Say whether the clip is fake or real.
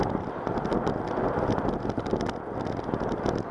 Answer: real